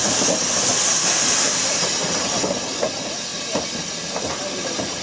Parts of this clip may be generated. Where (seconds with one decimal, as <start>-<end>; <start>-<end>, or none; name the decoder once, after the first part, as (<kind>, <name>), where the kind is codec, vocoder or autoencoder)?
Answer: none